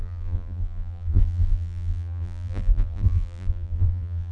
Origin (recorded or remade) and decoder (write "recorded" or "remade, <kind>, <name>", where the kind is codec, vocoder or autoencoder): remade, vocoder, BigVGAN v2